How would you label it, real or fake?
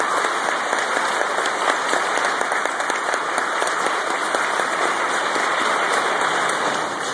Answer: real